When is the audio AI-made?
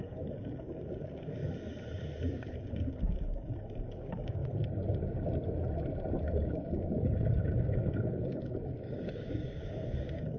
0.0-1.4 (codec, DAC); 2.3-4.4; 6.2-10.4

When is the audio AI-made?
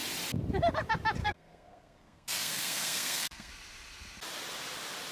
1.2-3.5 (codec, SNAC)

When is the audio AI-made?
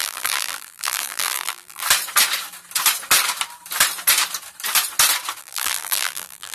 0.0-1.8 (vocoder, BigVGAN v2); 5.4-6.5